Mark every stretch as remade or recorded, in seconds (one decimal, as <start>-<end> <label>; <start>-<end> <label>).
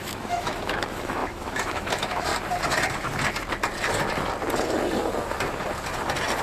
0.0-2.3 remade; 2.3-6.4 recorded